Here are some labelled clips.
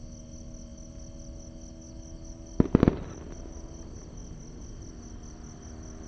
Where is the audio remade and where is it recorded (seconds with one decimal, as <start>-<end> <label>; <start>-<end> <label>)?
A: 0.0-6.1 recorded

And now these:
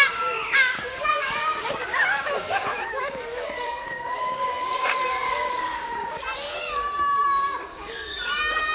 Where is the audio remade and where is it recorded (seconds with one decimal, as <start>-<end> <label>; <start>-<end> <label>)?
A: 0.0-8.7 remade

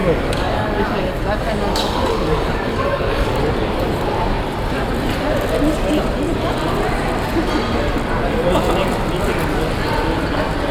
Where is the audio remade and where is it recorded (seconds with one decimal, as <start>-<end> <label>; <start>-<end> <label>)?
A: 0.0-3.4 remade; 3.4-10.7 recorded

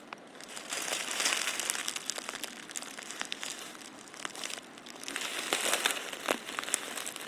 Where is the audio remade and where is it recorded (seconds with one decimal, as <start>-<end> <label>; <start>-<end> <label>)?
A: 0.0-7.3 recorded

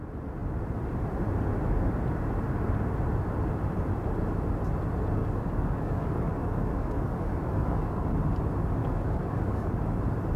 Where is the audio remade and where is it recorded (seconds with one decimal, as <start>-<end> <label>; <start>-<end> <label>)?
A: 0.0-5.2 recorded; 5.2-8.1 remade; 8.1-8.8 recorded; 8.8-9.8 remade; 9.8-10.4 recorded

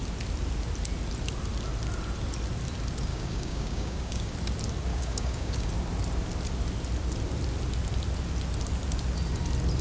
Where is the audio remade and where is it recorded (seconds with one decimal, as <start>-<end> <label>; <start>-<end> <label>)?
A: 0.0-3.1 recorded; 3.1-4.3 remade; 4.3-4.9 recorded; 4.9-5.7 remade; 5.7-9.8 recorded